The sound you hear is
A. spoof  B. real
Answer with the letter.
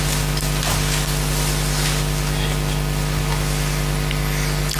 B